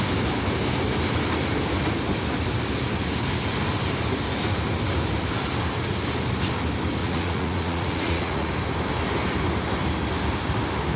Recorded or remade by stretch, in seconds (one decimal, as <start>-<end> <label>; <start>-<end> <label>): 0.0-7.0 recorded; 7.0-8.5 remade; 8.5-11.0 recorded